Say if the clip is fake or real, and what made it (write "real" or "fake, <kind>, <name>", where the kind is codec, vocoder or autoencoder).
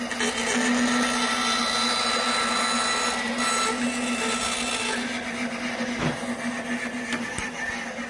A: real